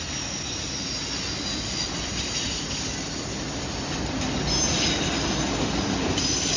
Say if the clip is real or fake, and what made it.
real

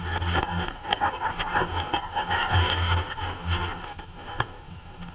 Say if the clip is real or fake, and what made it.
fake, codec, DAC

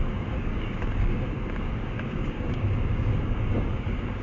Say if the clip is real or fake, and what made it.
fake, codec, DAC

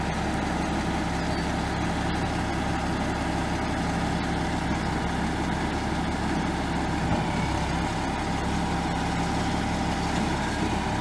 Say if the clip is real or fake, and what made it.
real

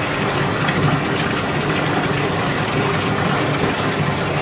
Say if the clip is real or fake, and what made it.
real